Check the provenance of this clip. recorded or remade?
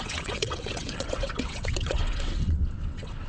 remade